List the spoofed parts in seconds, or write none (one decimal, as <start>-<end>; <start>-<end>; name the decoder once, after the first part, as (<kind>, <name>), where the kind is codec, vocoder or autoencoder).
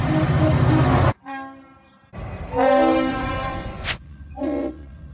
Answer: 3.1-5.1 (vocoder, Vocos)